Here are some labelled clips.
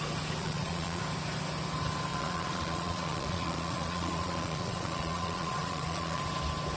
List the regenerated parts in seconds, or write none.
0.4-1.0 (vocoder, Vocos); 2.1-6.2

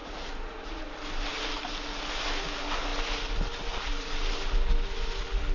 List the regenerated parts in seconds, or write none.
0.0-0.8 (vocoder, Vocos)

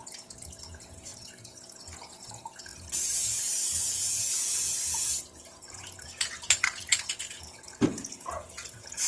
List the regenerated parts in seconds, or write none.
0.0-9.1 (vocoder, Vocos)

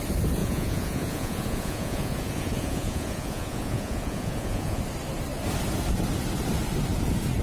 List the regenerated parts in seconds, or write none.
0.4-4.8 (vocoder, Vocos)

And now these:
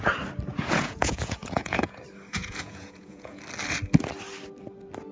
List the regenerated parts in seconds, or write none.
0.5-2.0 (vocoder, Vocos); 2.4-3.4

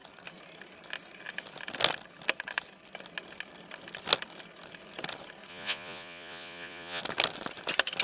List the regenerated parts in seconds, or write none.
5.5-7.0 (vocoder, Vocos)